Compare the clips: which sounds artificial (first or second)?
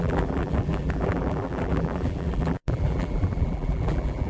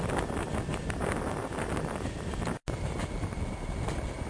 first